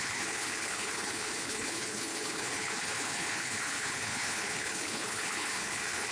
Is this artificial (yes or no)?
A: yes